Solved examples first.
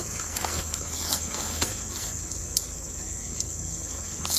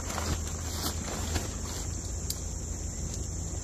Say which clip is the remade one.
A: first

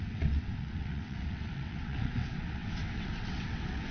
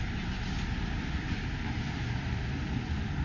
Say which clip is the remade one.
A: first